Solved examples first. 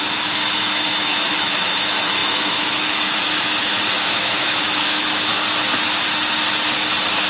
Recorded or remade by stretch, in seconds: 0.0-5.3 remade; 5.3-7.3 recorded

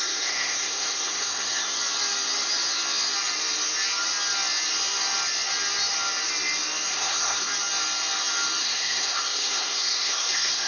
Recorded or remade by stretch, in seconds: 0.0-1.7 remade; 1.7-6.9 recorded; 6.9-7.5 remade; 7.5-8.6 recorded; 8.6-10.7 remade

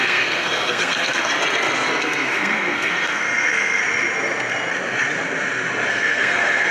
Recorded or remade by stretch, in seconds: 0.0-1.3 remade; 1.3-2.0 recorded; 2.0-3.8 remade; 3.8-5.9 recorded; 5.9-6.7 remade

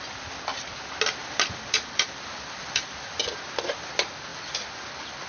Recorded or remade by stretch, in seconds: 0.0-1.2 recorded; 1.2-3.2 remade; 3.2-4.3 recorded; 4.3-5.3 remade

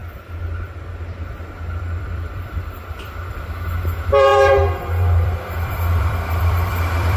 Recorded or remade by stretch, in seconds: 0.0-1.8 recorded; 1.8-7.2 remade

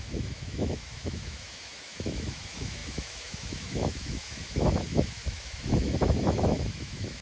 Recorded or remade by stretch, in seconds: 0.0-7.2 remade

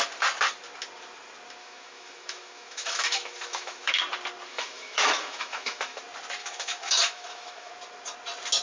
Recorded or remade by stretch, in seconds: 0.0-1.6 recorded; 1.6-4.0 remade; 4.0-4.5 recorded; 4.5-6.0 remade; 6.0-6.4 recorded; 6.4-7.7 remade; 7.7-8.6 recorded

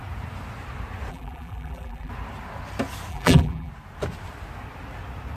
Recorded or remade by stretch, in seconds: 0.0-1.1 recorded; 1.1-2.1 remade; 2.1-3.1 recorded; 3.1-3.7 remade; 3.7-5.4 recorded